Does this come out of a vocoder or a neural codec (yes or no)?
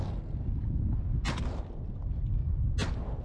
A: no